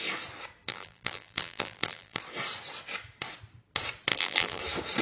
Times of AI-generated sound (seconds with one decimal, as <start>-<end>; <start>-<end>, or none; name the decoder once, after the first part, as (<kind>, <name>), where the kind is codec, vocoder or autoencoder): 0.7-2.2 (vocoder, BigVGAN v2); 4.1-4.6